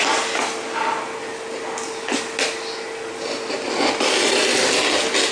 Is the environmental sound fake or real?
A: real